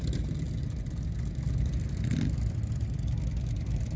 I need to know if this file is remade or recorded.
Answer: recorded